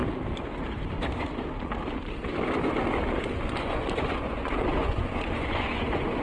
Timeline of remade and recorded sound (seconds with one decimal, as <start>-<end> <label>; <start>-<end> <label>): 0.0-3.3 recorded; 3.3-6.2 remade